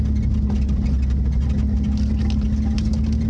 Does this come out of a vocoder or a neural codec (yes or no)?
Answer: no